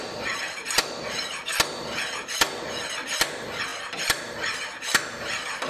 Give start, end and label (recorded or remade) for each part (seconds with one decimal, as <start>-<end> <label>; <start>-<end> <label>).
0.0-3.7 remade; 3.7-5.7 recorded

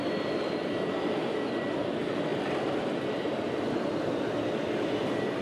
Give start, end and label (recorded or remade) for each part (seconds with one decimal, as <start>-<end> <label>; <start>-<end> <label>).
0.0-5.4 recorded

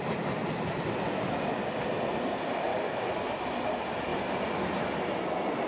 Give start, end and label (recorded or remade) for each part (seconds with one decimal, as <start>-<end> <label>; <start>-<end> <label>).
0.0-0.4 recorded; 0.4-2.1 remade; 2.1-2.7 recorded; 2.7-3.4 remade; 3.4-5.7 recorded

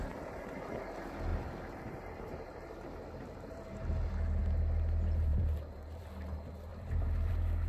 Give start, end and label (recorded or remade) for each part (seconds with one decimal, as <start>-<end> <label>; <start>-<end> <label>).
0.0-1.3 recorded; 1.3-4.4 remade; 4.4-5.3 recorded; 5.3-6.0 remade; 6.0-6.7 recorded; 6.7-7.3 remade; 7.3-7.7 recorded

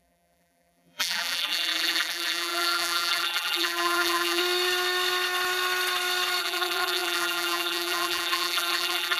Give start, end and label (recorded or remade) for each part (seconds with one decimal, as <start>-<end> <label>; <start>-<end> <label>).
0.0-4.4 remade; 4.4-6.4 recorded; 6.4-9.2 remade

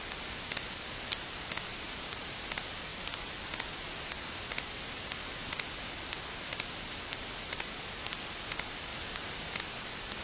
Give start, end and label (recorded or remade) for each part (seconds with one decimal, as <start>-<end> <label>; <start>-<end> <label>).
0.0-1.7 recorded; 1.7-2.4 remade; 2.4-8.9 recorded; 8.9-9.6 remade; 9.6-10.2 recorded

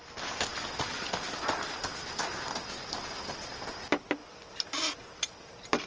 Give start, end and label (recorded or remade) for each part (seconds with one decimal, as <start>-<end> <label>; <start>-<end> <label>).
0.0-4.2 recorded; 4.2-4.9 remade; 4.9-5.9 recorded

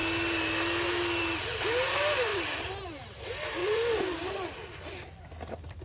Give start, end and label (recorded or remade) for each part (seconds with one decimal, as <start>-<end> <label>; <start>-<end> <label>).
0.0-2.3 recorded; 2.3-3.2 remade; 3.2-3.6 recorded; 3.6-4.3 remade; 4.3-5.8 recorded